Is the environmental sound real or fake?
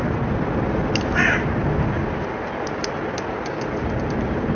real